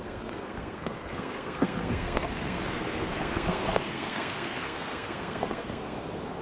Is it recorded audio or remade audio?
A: remade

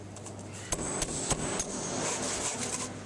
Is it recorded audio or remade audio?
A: recorded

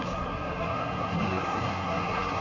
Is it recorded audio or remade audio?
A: remade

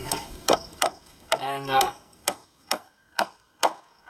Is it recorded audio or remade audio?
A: remade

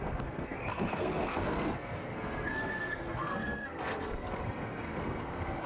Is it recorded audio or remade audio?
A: remade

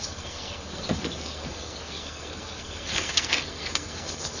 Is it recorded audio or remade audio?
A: remade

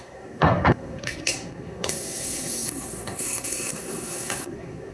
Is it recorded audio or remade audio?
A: remade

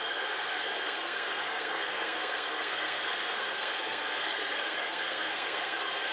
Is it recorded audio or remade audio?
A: remade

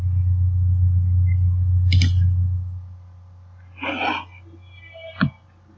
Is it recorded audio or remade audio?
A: recorded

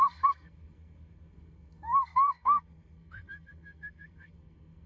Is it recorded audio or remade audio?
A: remade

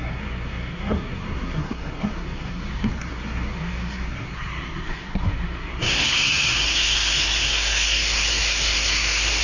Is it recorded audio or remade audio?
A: remade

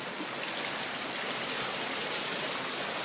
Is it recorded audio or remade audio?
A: recorded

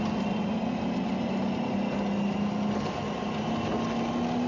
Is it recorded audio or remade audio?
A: recorded